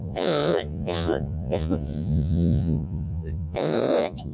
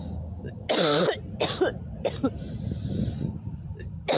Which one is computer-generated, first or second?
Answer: first